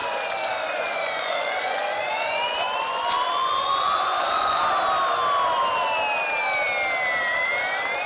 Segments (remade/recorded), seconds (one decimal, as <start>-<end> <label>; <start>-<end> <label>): 0.0-4.7 remade; 4.7-8.1 recorded